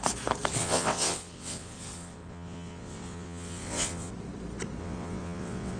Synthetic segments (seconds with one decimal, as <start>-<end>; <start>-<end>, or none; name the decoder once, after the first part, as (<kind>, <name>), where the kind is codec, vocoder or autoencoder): 0.6-4.1 (vocoder, WaveNeXt); 4.8-5.8